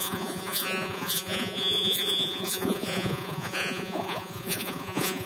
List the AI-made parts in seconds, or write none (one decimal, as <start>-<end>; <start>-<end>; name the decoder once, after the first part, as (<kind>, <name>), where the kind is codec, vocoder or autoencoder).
0.0-5.3 (vocoder, Vocos)